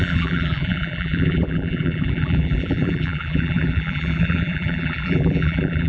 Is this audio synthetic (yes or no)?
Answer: yes